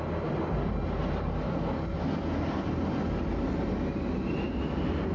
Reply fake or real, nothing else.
real